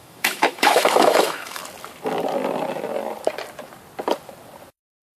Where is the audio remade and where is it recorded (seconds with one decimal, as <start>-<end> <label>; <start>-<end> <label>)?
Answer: 0.0-1.6 remade; 1.6-4.7 recorded; 4.7-5.2 remade